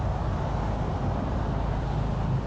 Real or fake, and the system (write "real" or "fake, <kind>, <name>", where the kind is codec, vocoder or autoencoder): real